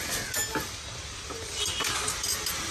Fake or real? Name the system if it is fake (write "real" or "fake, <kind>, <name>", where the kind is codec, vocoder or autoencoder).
real